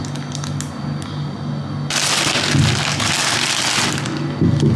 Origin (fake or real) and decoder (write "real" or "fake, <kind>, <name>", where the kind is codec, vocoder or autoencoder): real